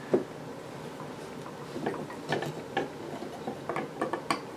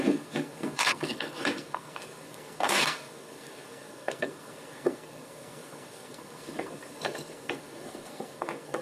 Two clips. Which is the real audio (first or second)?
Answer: first